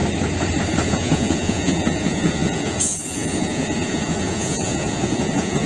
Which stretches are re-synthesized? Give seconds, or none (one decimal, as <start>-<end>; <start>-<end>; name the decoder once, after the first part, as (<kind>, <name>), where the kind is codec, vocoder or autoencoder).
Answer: 0.9-5.7 (vocoder, Vocos)